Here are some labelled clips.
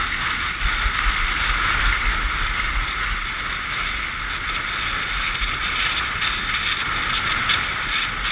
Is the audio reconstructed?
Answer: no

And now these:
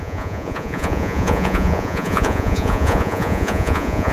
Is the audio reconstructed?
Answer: yes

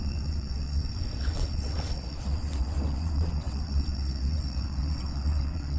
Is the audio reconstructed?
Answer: yes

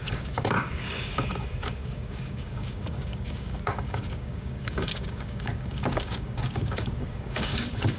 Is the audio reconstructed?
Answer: yes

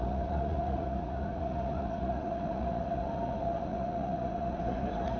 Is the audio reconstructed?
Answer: yes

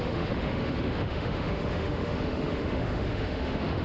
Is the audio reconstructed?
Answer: yes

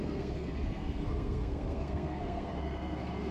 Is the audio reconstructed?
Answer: yes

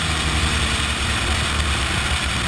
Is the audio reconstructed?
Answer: yes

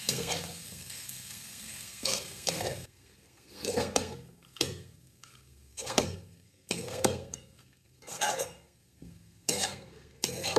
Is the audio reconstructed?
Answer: yes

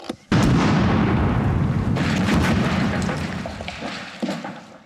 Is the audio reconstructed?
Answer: no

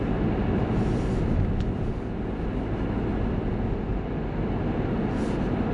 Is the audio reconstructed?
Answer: no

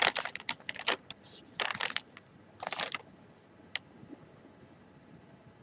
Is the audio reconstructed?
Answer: no